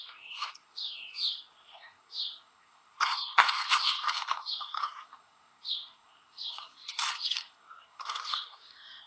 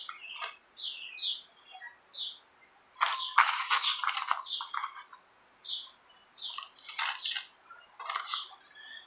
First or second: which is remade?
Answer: first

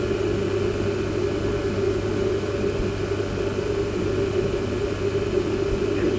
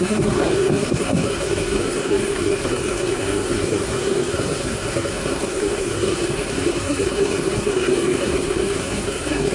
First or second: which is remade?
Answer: second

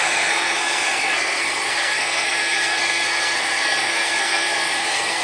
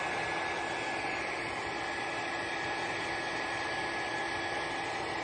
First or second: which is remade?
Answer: first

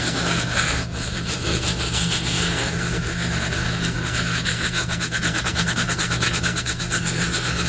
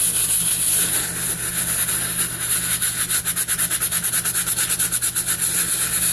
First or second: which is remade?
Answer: first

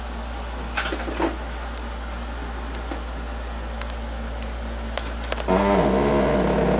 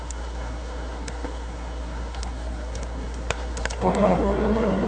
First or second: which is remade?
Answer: second